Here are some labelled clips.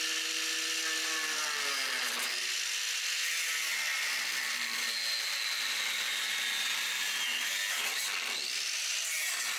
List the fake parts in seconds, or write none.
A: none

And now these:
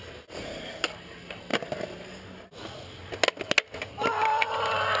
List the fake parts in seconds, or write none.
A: none

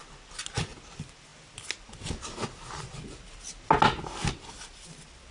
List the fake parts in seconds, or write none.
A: none

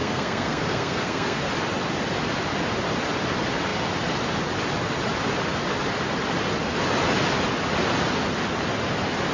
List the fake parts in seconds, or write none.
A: 0.0-1.5 (codec, SNAC)

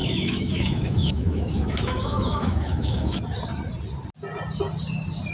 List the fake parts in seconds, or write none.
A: 0.0-3.2 (autoencoder, DAC-VAE)

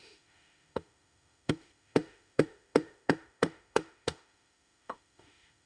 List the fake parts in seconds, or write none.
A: 0.0-5.7 (autoencoder, DAC-VAE)

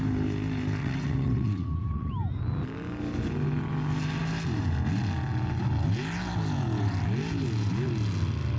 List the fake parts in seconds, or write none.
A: 0.8-2.1 (vocoder, WaveNeXt)